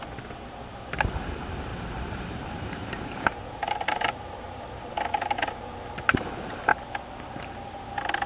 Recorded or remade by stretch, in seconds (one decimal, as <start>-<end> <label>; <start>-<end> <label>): 0.0-1.7 recorded; 1.7-4.6 remade; 4.6-8.3 recorded

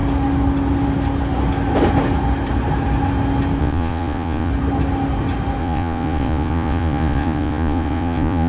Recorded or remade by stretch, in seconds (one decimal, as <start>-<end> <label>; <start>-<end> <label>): 0.0-3.6 recorded; 3.6-4.5 remade; 4.5-5.6 recorded; 5.6-8.5 remade